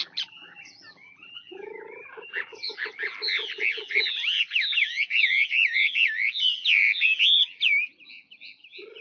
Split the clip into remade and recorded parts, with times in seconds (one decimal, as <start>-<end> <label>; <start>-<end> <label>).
0.0-9.0 remade